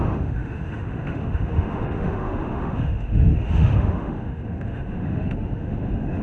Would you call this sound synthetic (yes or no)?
yes